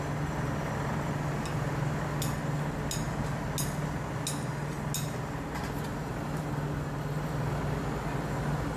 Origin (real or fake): real